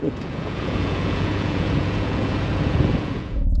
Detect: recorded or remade remade